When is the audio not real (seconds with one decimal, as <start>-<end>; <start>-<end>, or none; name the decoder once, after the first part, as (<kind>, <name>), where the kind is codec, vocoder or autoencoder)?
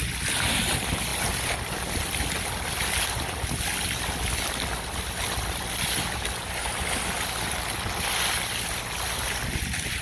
none